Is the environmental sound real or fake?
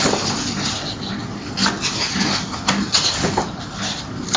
fake